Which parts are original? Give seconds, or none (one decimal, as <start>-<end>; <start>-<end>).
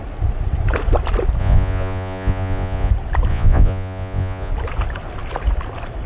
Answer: 0.0-1.4; 2.9-3.3; 4.5-6.1